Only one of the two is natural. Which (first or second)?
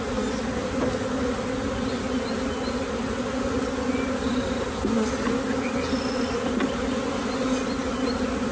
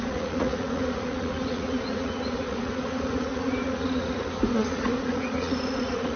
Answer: first